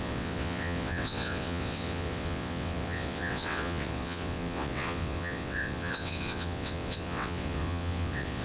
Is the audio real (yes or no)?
no